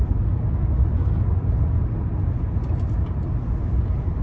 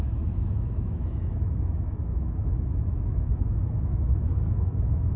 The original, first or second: first